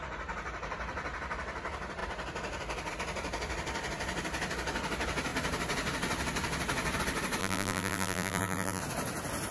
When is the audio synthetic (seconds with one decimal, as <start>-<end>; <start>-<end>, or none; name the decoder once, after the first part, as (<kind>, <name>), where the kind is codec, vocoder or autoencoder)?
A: 7.4-8.8 (vocoder, BigVGAN v2)